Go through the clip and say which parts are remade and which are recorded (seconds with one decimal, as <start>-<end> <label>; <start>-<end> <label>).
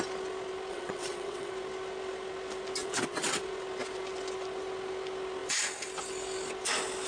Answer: 0.0-0.7 recorded; 0.7-1.5 remade; 1.5-2.8 recorded; 2.8-3.4 remade; 3.4-7.1 recorded